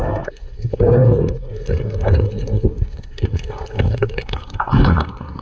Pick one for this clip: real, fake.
fake